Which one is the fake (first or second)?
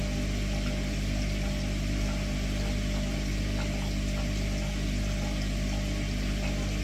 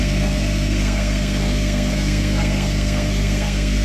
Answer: second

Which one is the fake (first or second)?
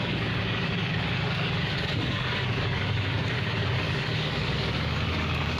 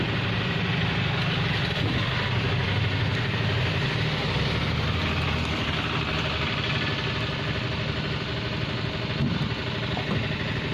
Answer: first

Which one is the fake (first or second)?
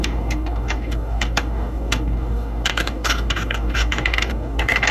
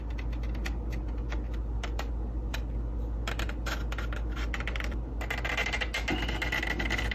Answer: first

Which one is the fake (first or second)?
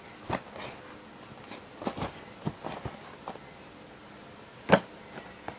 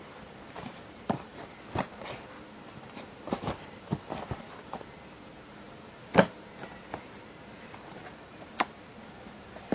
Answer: second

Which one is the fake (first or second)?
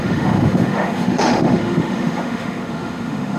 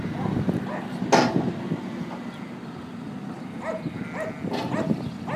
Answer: first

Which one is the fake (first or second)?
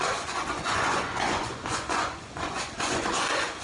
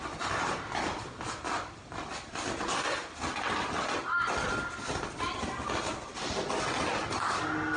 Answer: first